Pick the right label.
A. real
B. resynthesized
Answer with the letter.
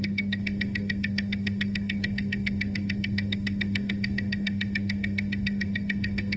B